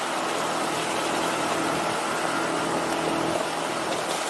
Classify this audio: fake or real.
real